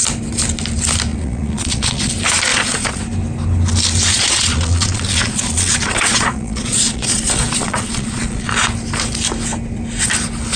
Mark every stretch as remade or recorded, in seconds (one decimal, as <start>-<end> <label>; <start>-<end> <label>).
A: 0.0-1.1 recorded; 1.1-2.1 remade; 2.1-2.5 recorded; 2.5-3.0 remade; 3.0-4.1 recorded; 4.1-8.5 remade; 8.5-10.6 recorded